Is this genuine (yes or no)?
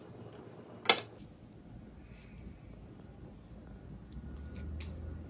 yes